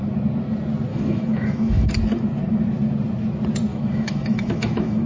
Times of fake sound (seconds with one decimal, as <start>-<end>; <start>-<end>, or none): 0.9-1.9; 3.7-5.1